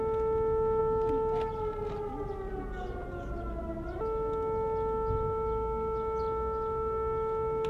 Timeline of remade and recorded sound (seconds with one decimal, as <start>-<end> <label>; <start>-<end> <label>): 0.0-7.7 recorded